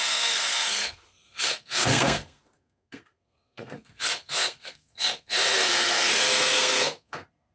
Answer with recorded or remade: remade